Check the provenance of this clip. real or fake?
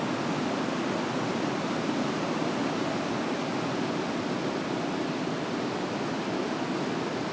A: real